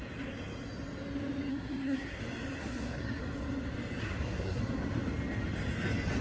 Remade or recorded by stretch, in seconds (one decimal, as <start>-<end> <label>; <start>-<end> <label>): 0.0-1.5 recorded; 1.5-2.2 remade; 2.2-2.6 recorded; 2.6-3.2 remade; 3.2-4.0 recorded; 4.0-4.6 remade; 4.6-6.2 recorded